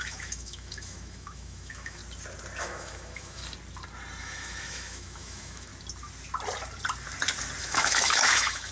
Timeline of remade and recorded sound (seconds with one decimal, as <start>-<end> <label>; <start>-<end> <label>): 0.0-2.0 remade; 2.0-2.6 recorded; 2.6-3.4 remade; 3.4-4.2 recorded; 4.2-5.7 remade; 5.7-7.6 recorded; 7.6-8.7 remade